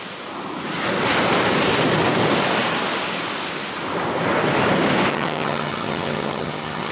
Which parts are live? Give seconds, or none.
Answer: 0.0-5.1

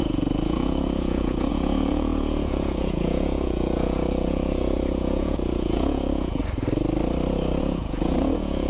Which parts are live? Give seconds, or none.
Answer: 6.4-7.6